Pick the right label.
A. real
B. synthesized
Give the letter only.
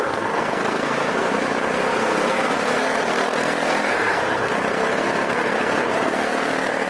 B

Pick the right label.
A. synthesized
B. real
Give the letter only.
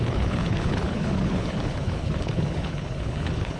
A